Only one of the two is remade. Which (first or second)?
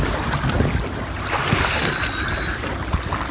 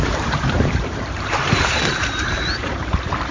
second